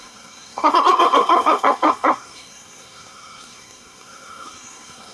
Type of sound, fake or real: fake